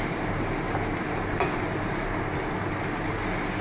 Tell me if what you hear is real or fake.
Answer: real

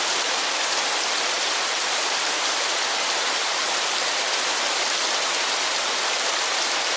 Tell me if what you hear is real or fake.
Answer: real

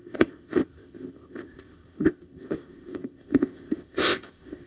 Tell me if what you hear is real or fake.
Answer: fake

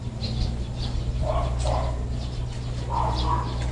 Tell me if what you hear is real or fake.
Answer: real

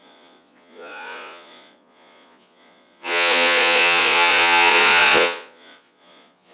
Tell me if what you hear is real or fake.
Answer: fake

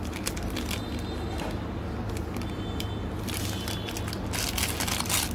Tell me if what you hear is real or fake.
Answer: real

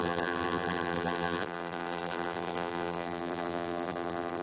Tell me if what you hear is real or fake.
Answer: fake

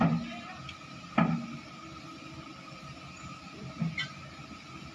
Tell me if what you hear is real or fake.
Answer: real